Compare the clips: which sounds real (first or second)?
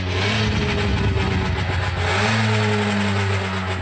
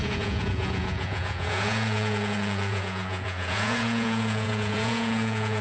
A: first